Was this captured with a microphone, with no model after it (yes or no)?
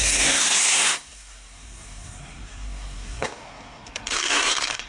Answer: no